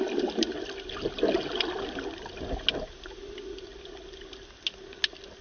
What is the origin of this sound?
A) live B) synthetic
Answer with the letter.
A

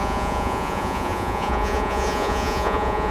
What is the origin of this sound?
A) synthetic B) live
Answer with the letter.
A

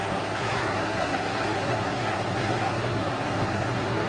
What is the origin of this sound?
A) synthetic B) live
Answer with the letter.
A